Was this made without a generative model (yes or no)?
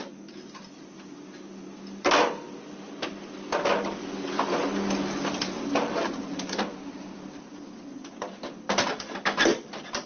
yes